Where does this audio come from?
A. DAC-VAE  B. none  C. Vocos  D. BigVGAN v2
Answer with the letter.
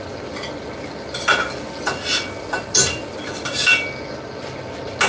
B